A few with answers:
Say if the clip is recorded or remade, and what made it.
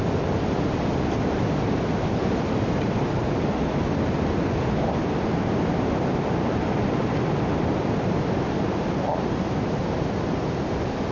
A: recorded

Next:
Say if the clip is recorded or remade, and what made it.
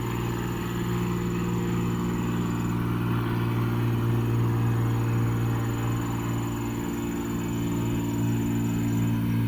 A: recorded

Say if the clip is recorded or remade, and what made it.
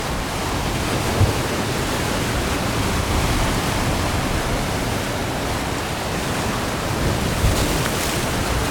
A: recorded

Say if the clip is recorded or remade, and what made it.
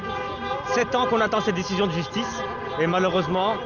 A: recorded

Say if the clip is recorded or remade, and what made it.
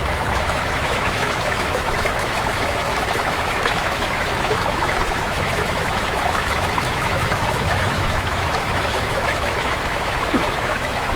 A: remade, autoencoder, DAC-VAE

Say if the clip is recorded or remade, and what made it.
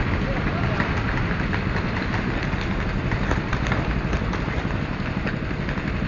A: recorded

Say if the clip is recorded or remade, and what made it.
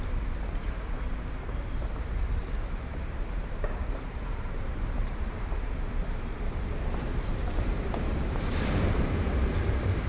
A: remade, vocoder, BigVGAN v2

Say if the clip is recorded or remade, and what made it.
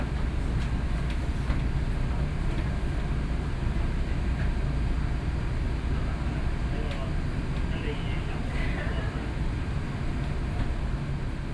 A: recorded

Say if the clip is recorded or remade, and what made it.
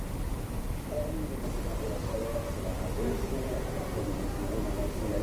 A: recorded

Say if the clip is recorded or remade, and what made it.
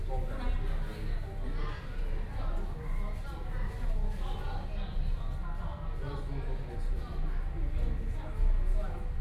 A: recorded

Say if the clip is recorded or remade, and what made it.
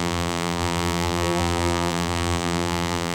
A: remade, vocoder, BigVGAN v2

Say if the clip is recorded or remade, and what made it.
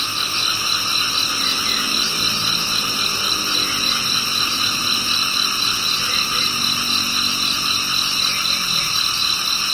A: recorded